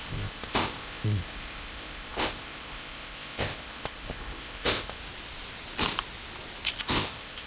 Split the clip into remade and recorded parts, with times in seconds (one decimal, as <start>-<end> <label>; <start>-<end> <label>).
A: 0.0-5.0 remade; 5.0-6.8 recorded; 6.8-7.5 remade